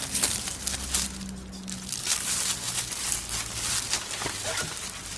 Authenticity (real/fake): real